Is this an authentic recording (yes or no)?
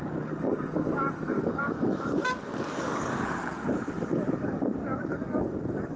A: no